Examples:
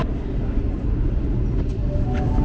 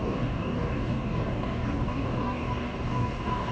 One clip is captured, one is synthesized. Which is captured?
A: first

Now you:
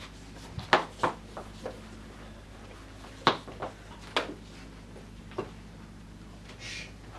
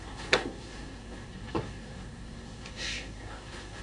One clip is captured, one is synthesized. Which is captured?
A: first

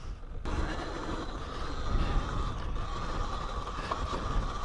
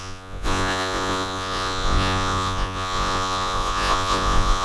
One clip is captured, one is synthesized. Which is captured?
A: first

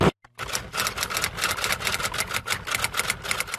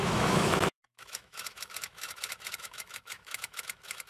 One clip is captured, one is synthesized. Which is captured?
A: first